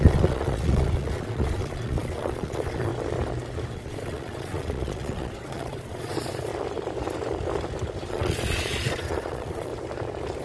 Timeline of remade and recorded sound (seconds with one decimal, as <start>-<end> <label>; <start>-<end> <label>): 0.0-2.9 remade; 2.9-3.7 recorded; 3.7-6.5 remade; 6.5-8.1 recorded; 8.1-9.7 remade; 9.7-10.4 recorded